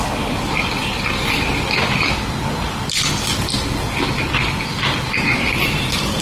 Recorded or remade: recorded